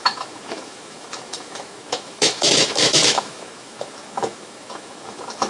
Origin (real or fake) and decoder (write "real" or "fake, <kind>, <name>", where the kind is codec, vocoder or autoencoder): fake, autoencoder, DAC-VAE